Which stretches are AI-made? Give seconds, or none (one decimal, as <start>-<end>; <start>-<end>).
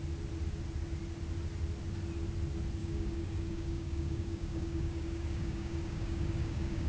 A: 2.8-6.9